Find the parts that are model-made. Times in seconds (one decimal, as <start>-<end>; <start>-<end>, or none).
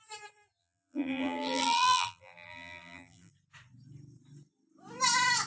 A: 0.6-3.3